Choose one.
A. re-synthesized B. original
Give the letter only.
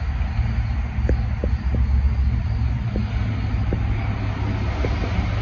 B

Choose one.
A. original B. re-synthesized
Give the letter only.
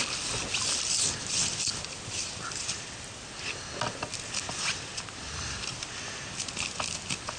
A